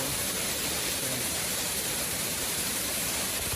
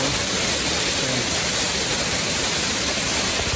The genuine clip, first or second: second